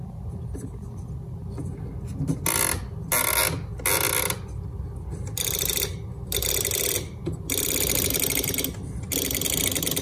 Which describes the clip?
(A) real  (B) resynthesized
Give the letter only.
A